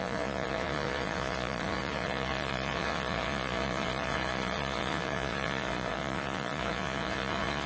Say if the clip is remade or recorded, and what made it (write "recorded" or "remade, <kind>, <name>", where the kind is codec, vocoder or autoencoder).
remade, vocoder, Vocos